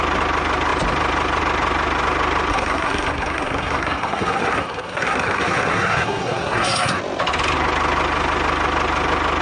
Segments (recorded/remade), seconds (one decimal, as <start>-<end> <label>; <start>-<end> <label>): 0.0-2.5 recorded; 2.5-7.0 remade; 7.0-9.4 recorded